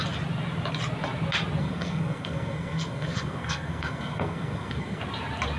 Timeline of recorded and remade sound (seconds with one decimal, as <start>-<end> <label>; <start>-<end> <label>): 0.0-1.6 recorded; 1.6-5.0 remade; 5.0-5.6 recorded